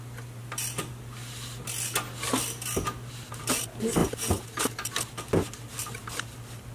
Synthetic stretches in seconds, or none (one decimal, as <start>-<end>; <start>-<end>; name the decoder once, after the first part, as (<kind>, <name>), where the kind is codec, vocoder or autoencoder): none